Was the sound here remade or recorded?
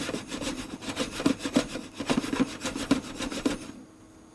recorded